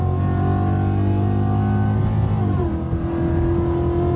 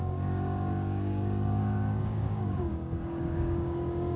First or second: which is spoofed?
second